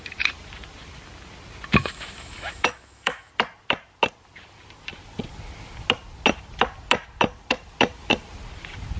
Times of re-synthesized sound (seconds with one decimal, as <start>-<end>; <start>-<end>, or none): 1.8-3.3

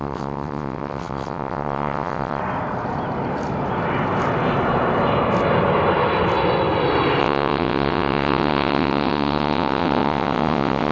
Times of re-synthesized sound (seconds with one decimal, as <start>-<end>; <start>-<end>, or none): 0.0-2.4; 7.2-10.9

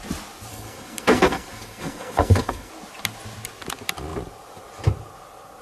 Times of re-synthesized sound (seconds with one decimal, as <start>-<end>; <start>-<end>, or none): 0.5-2.7

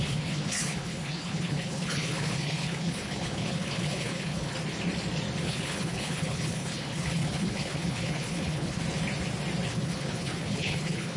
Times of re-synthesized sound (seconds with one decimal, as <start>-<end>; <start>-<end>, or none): 0.0-4.6; 5.4-8.8; 9.7-11.2

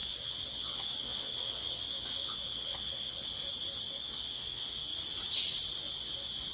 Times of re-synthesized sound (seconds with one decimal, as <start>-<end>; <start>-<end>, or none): 0.0-3.4; 3.9-4.9; 5.8-6.5